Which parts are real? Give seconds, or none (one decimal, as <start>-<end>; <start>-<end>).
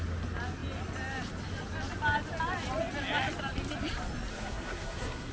0.0-4.3